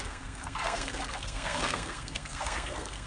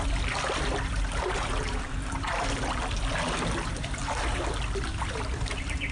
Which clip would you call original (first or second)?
second